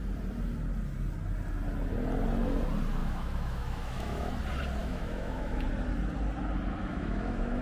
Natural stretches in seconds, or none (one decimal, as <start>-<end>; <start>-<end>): 0.0-3.0; 4.3-4.8; 5.6-6.8